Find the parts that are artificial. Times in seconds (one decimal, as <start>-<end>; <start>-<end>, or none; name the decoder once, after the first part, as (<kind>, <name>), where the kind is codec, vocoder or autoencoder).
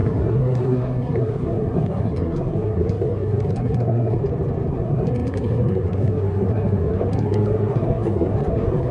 0.0-4.2 (codec, SNAC); 4.7-8.9